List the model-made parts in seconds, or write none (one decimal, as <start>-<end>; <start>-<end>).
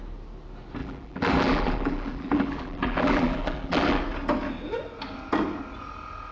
0.8-4.0